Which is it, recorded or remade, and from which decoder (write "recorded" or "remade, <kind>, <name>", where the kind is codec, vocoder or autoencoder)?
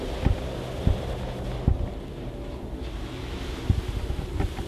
recorded